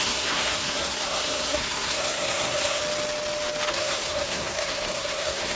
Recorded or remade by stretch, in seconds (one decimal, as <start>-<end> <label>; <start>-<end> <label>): 0.0-2.8 remade; 2.8-3.7 recorded; 3.7-5.6 remade